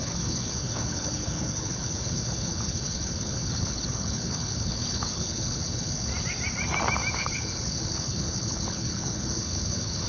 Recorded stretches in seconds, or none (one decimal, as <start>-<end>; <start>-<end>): 6.1-7.1